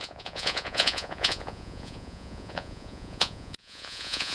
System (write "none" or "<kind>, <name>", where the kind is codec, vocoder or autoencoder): vocoder, Vocos